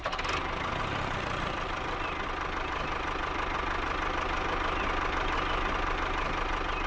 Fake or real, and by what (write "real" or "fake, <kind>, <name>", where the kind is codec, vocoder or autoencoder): real